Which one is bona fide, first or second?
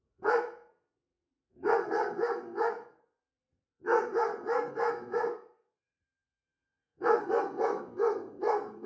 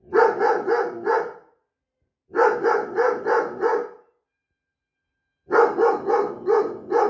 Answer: second